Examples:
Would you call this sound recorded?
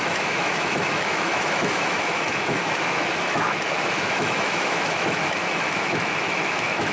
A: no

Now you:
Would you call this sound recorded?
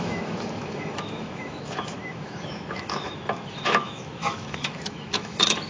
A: no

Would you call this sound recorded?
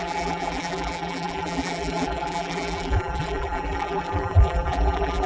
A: no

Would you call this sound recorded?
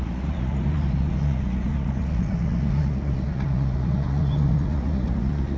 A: no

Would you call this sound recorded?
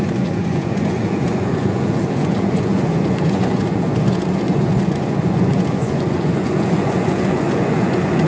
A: no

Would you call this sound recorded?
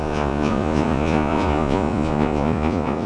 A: no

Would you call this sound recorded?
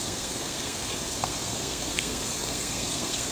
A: no